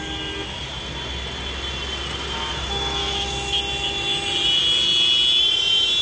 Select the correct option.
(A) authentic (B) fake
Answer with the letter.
A